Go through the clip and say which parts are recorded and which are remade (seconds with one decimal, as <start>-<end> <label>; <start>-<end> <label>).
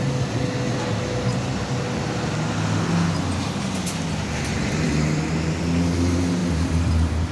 0.0-7.3 recorded